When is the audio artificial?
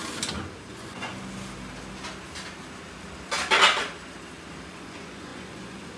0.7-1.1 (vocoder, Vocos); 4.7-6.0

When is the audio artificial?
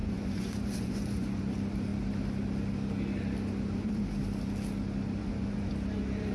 0.0-1.4 (vocoder, Vocos); 5.2-5.7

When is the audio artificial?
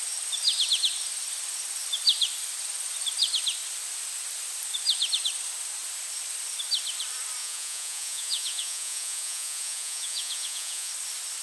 7.4-10.9 (vocoder, Vocos)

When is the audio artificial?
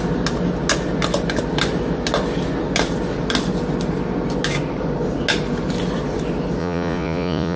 6.6-7.6 (vocoder, Vocos)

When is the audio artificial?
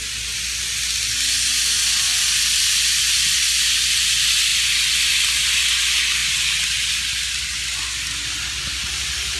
none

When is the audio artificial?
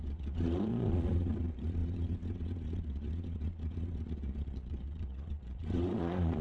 0.0-6.4 (vocoder, Vocos)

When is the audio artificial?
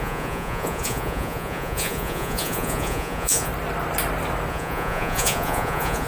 0.0-3.5 (vocoder, Vocos); 4.5-6.1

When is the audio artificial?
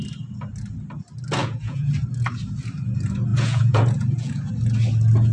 1.4-1.9 (vocoder, Vocos); 3.3-4.5